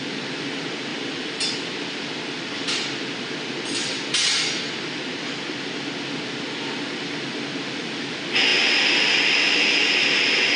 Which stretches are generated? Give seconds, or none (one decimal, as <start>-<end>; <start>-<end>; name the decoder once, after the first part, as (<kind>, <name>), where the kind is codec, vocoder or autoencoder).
0.9-2.1 (vocoder, BigVGAN v2)